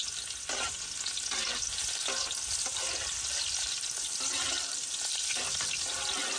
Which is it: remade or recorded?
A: recorded